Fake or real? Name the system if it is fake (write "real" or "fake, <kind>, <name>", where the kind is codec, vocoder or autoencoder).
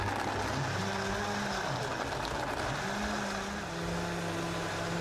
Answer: real